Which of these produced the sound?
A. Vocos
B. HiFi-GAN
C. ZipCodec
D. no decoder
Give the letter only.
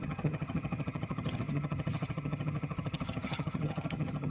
B